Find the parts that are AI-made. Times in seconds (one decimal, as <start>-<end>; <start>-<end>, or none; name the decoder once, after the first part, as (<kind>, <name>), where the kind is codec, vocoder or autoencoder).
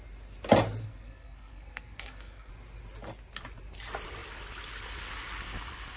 0.8-2.5 (codec, SNAC)